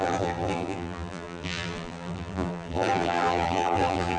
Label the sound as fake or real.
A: fake